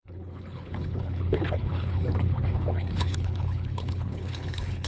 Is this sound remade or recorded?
remade